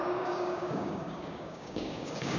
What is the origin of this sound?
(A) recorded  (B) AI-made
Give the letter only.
B